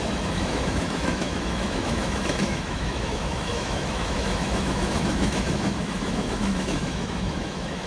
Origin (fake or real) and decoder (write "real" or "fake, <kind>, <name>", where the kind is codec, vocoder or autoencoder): fake, autoencoder, DAC-VAE